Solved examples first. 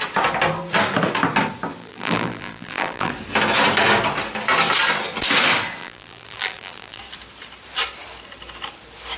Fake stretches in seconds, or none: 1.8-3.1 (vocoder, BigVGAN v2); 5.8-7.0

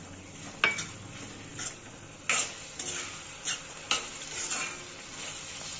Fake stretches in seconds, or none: none

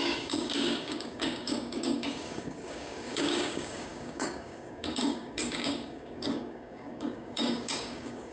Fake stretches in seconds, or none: 0.0-8.3 (codec, DAC)